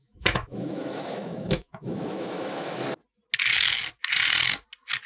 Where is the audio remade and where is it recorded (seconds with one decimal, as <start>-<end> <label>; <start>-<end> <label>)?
0.0-2.8 remade; 2.8-3.4 recorded; 3.4-3.8 remade; 3.8-5.1 recorded